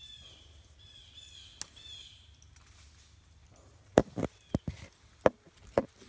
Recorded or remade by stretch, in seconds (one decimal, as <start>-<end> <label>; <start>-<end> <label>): 0.0-3.4 recorded; 3.4-4.4 remade; 4.4-6.1 recorded